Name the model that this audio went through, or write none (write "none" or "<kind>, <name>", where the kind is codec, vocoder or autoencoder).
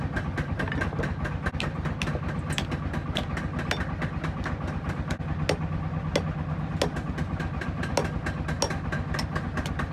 none